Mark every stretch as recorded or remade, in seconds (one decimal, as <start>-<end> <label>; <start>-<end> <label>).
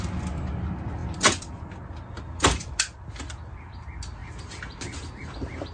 0.0-5.7 recorded